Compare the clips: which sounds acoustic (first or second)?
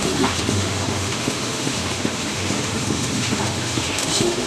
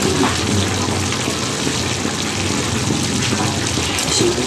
second